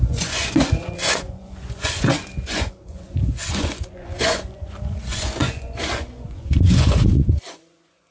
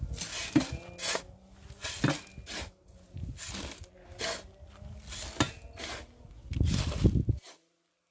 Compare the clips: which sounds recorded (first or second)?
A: second